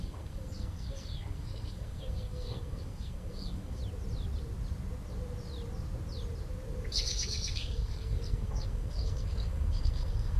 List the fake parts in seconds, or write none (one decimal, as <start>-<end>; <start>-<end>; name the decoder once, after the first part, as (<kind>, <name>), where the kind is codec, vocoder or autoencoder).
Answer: 0.0-3.8 (codec, SNAC); 6.9-10.4